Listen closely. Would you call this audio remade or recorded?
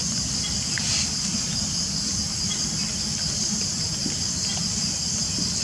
recorded